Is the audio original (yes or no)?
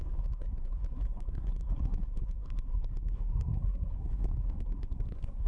no